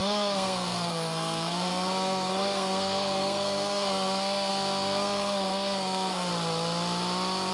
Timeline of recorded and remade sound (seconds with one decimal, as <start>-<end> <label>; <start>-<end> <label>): 0.0-6.3 remade; 6.3-7.5 recorded